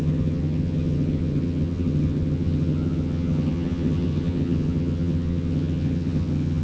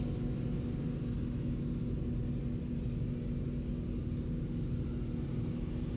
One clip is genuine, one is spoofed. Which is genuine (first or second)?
second